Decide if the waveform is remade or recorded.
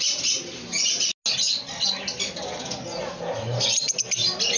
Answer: recorded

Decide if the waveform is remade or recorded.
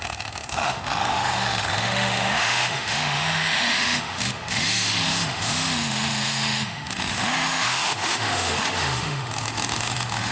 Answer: remade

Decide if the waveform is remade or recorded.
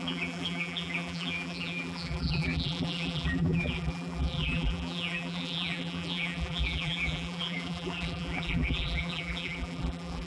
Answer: remade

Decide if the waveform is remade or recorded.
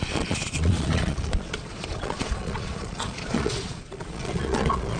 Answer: remade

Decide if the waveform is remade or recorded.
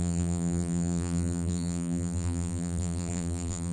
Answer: remade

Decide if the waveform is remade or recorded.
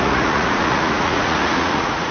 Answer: remade